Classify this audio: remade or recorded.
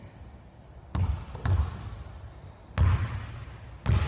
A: recorded